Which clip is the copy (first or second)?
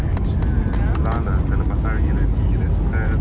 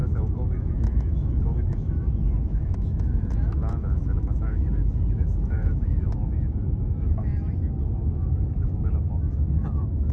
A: second